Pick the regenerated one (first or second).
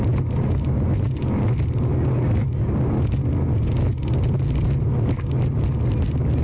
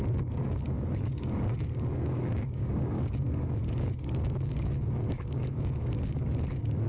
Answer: second